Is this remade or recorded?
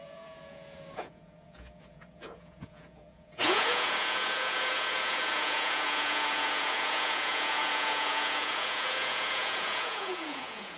remade